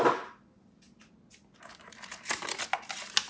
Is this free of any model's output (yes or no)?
yes